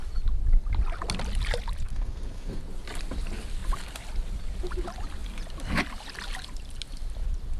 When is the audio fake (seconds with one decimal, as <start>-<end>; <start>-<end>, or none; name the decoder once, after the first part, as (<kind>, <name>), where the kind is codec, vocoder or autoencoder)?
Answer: 1.9-2.6 (codec, SNAC)